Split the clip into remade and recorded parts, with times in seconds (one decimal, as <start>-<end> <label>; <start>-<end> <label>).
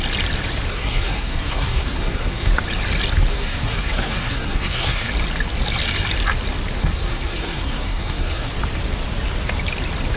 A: 0.0-0.7 recorded; 0.7-2.5 remade; 2.5-3.3 recorded; 3.3-5.1 remade; 5.1-6.8 recorded; 6.8-8.5 remade; 8.5-10.2 recorded